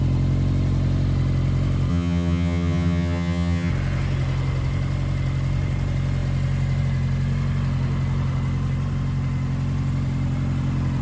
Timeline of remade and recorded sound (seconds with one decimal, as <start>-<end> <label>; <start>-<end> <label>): 0.0-1.9 recorded; 1.9-3.7 remade; 3.7-11.0 recorded